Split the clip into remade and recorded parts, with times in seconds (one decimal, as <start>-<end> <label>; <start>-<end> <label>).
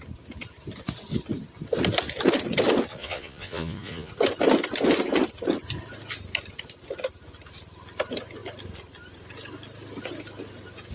0.0-2.9 recorded; 2.9-4.1 remade; 4.1-10.9 recorded